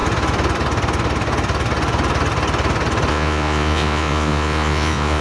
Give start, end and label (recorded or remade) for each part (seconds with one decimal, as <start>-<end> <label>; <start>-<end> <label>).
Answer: 0.0-3.1 recorded; 3.1-5.2 remade